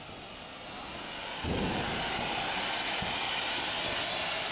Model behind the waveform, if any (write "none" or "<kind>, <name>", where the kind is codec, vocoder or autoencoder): none